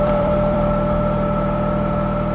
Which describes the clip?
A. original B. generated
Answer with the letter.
B